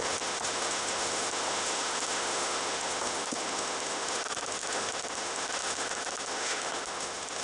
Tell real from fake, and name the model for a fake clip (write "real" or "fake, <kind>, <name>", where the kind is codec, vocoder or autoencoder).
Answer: fake, autoencoder, DAC-VAE